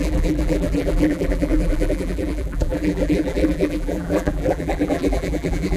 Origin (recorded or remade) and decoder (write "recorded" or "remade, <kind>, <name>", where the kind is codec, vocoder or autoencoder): remade, vocoder, BigVGAN v2